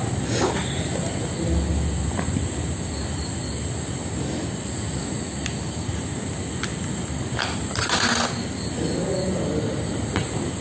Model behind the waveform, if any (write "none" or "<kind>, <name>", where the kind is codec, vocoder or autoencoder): none